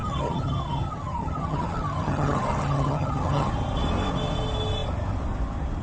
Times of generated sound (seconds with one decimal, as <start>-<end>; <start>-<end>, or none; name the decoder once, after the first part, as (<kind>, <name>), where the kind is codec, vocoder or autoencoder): 0.0-3.5 (vocoder, HiFi-GAN)